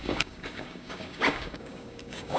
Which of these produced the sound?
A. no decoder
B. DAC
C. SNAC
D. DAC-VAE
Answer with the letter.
B